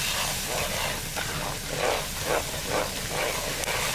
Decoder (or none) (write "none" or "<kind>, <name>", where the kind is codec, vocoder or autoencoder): vocoder, BigVGAN v2